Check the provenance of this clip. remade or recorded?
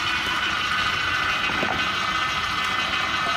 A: recorded